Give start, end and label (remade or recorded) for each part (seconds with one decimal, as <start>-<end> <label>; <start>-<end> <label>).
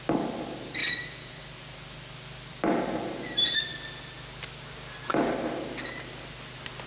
0.0-0.8 recorded; 0.8-1.4 remade; 1.4-6.9 recorded